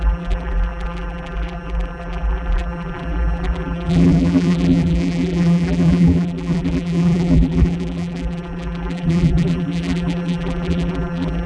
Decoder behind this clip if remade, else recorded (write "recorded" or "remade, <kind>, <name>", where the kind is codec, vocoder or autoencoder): remade, vocoder, BigVGAN v2